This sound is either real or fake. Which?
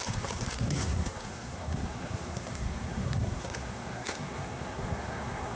fake